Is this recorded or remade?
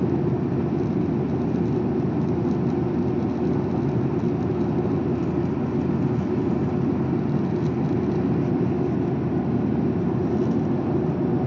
recorded